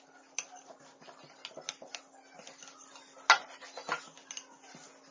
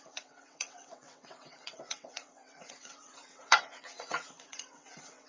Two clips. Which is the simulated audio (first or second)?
second